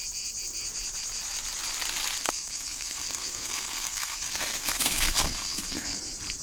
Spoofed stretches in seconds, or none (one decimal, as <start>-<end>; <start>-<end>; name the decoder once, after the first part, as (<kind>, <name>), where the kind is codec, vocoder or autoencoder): 2.2-6.0 (codec, SNAC)

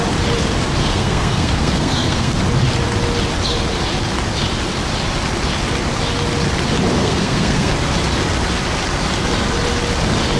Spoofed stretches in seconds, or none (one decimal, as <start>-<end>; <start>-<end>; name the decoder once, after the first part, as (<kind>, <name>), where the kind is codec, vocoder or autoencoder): 0.8-2.4 (codec, SNAC); 7.0-7.7

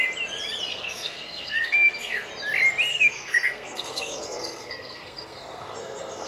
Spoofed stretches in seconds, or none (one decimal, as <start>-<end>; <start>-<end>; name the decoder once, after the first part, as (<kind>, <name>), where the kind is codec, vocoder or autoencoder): 0.7-2.3 (codec, SNAC); 2.9-6.3